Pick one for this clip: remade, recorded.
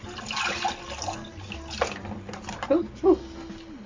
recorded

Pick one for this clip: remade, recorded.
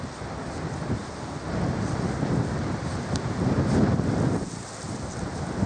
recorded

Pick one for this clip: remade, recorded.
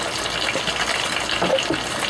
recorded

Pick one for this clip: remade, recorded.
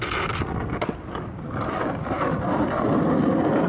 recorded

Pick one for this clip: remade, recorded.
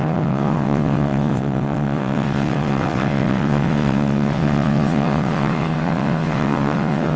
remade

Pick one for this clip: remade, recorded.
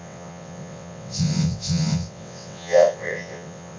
remade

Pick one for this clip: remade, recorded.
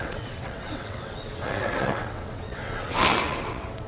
remade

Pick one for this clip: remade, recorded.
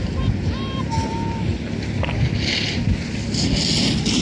recorded